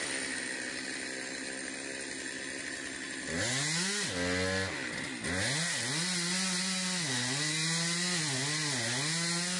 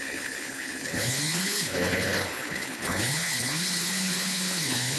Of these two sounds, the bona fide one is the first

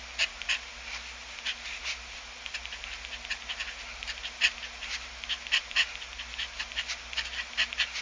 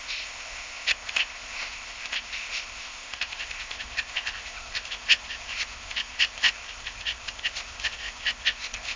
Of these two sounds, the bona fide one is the first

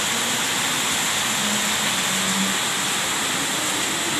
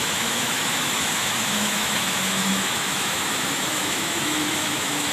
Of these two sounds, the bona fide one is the first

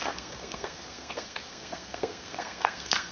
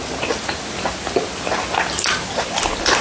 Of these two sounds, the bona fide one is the second